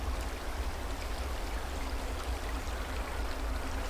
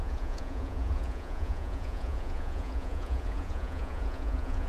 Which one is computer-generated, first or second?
second